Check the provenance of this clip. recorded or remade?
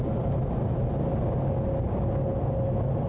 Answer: recorded